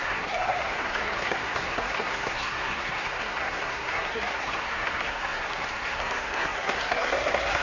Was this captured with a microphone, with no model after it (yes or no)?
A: no